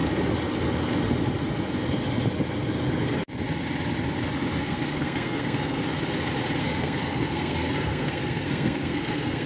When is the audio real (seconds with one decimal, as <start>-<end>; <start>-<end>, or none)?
0.0-4.6; 5.8-6.6